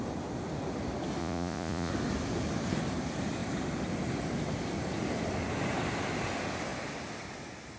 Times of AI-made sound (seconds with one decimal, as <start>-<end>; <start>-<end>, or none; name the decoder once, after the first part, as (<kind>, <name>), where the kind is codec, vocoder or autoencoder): 1.2-1.9 (vocoder, Vocos)